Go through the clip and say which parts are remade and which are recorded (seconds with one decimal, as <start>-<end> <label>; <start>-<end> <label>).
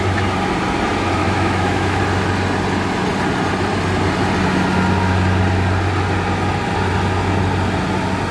0.0-1.2 recorded; 1.2-2.0 remade; 2.0-8.3 recorded